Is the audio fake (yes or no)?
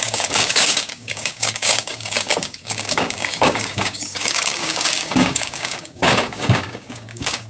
yes